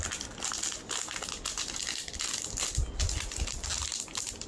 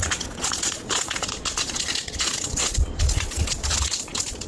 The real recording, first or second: first